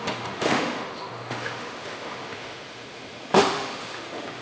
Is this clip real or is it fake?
fake